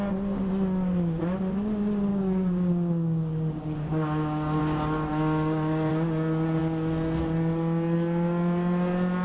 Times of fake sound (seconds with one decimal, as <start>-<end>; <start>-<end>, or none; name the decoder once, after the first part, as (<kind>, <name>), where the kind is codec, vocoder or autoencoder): 2.1-4.6 (codec, DAC); 5.1-5.9